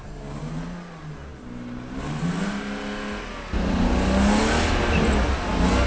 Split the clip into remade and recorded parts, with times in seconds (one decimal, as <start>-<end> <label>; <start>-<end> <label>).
0.0-5.9 recorded